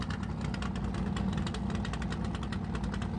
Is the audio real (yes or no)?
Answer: yes